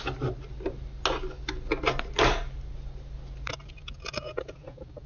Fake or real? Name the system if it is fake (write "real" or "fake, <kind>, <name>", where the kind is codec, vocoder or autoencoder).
real